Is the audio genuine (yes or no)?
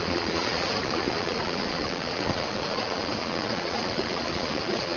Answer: no